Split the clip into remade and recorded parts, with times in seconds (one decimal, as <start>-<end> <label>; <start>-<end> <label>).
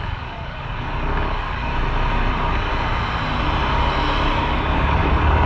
0.0-1.7 remade; 1.7-2.3 recorded; 2.3-2.7 remade; 2.7-4.4 recorded; 4.4-5.5 remade